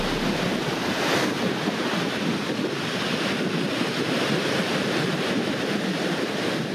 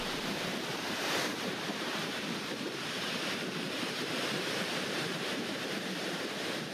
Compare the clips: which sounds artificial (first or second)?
second